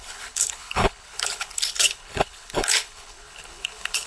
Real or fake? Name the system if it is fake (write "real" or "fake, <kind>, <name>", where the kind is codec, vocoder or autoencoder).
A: fake, codec, HILCodec